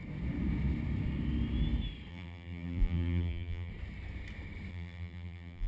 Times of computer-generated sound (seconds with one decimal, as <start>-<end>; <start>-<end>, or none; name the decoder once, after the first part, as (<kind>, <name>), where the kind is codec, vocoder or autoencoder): 2.1-3.7 (vocoder, BigVGAN v2); 4.7-5.7